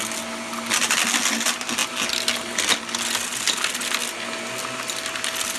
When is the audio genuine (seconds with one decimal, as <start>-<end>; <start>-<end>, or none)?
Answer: 0.0-5.6